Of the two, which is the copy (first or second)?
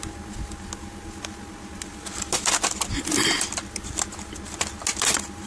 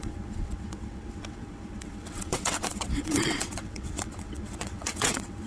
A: second